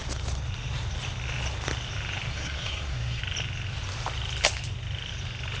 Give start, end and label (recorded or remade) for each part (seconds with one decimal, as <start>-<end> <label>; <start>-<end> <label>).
0.0-2.3 recorded; 2.3-3.2 remade; 3.2-5.6 recorded